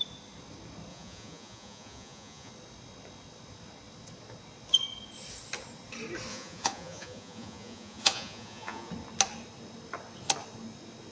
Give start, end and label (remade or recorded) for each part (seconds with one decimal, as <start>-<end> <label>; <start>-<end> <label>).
0.0-0.9 recorded; 0.9-2.5 remade; 2.5-6.3 recorded; 6.3-8.9 remade; 8.9-11.1 recorded